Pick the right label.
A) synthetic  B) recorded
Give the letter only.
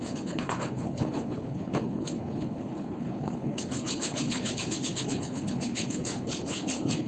A